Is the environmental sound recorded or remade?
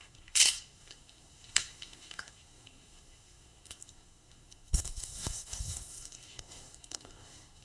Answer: remade